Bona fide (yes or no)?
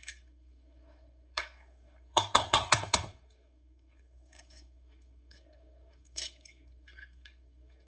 no